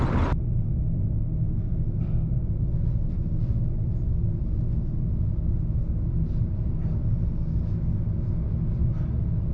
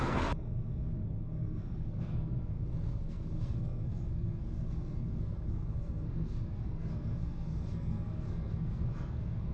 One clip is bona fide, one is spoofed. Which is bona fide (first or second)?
first